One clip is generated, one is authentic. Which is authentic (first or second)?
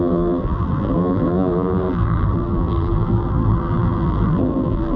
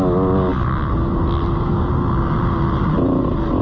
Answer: second